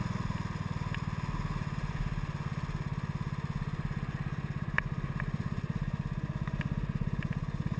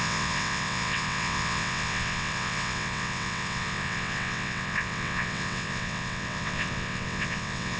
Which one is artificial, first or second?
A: second